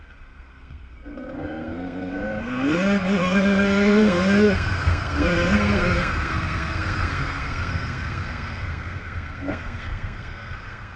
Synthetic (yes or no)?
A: yes